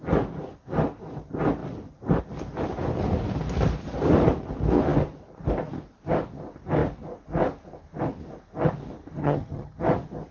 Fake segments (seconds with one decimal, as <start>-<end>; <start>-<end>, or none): 9.2-9.8